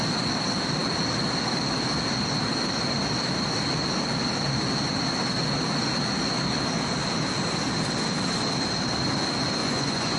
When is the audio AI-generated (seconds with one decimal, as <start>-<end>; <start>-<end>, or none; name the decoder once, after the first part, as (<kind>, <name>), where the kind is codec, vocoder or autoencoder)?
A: 9.6-10.2 (vocoder, Vocos)